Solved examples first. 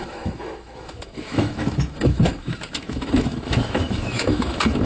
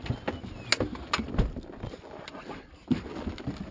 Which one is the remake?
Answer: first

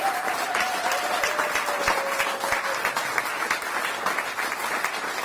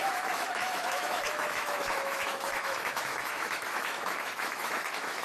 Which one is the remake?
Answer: second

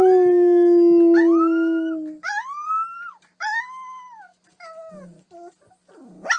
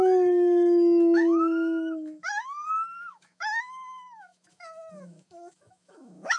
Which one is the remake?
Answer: second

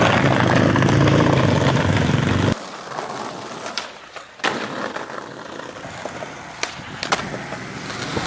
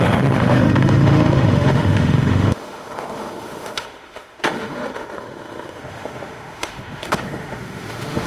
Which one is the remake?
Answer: second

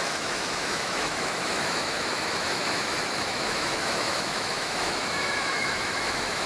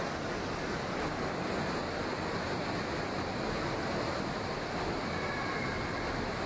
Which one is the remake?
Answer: first